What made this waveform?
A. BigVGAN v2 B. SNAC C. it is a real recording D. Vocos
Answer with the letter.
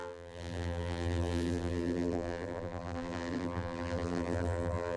A